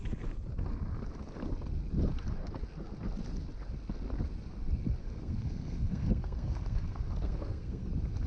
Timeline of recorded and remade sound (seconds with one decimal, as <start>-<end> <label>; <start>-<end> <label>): 0.0-5.0 recorded; 5.0-7.9 remade; 7.9-8.3 recorded

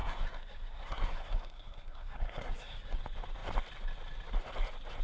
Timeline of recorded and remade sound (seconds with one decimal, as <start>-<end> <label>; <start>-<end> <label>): 0.0-3.0 remade; 3.0-5.0 recorded